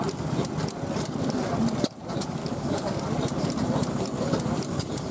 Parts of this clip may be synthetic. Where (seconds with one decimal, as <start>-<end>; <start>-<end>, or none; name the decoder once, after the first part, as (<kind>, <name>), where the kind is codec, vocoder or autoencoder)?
2.4-3.0 (codec, DAC)